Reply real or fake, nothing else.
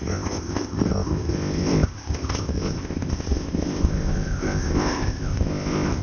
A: fake